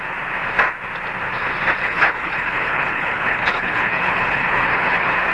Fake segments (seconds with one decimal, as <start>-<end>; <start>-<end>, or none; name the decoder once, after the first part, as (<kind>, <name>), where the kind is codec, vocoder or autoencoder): 1.8-5.3 (codec, HILCodec)